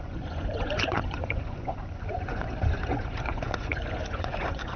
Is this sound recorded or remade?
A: remade